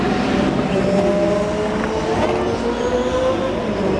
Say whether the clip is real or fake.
real